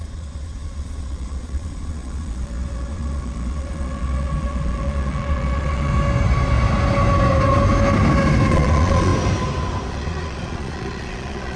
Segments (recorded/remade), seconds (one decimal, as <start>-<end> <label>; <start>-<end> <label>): 0.0-5.9 remade; 5.9-8.5 recorded; 8.5-9.1 remade; 9.1-9.9 recorded; 9.9-11.6 remade